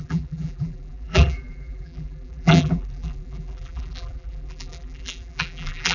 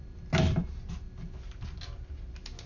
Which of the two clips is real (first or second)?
second